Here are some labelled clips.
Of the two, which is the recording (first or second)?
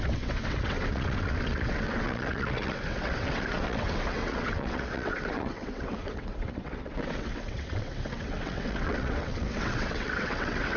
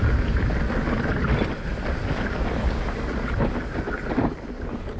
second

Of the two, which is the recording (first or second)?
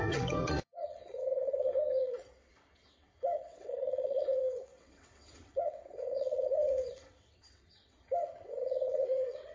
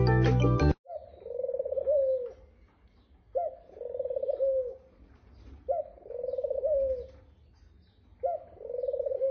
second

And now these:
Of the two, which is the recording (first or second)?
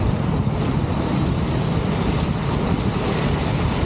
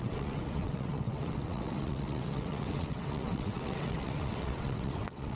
first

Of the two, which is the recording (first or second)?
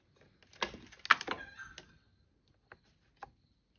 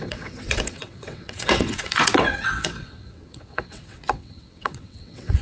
first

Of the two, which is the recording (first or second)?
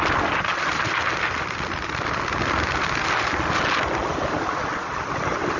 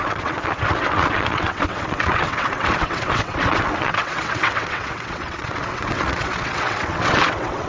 first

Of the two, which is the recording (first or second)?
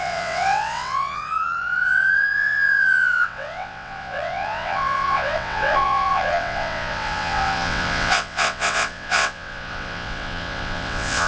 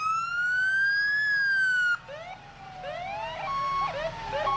second